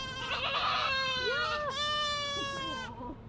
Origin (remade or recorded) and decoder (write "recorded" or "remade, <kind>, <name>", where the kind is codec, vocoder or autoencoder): recorded